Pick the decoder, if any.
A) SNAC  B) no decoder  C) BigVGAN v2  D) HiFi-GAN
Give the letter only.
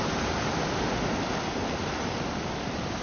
B